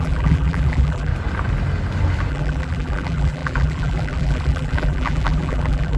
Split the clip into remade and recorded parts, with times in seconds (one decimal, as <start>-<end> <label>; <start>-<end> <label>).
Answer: 0.0-1.1 remade; 1.1-2.3 recorded; 2.3-6.0 remade